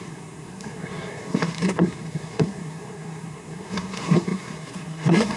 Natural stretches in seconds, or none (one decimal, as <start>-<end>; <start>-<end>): none